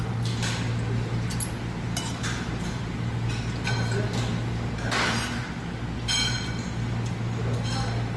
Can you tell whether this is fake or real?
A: real